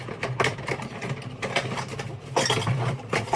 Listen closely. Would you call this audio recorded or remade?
recorded